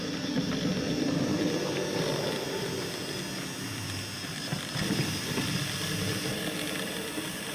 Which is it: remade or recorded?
recorded